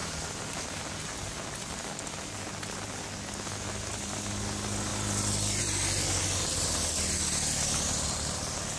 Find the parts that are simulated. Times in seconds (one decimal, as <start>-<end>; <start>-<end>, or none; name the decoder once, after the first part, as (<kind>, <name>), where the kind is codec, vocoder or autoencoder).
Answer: none